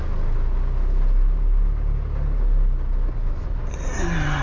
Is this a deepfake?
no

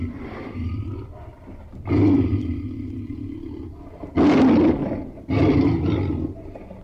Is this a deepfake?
no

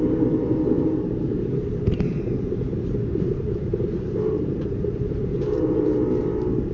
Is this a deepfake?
yes